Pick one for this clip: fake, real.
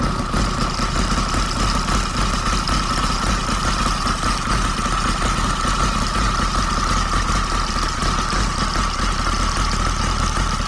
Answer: real